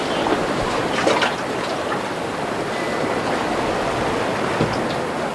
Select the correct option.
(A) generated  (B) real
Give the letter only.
B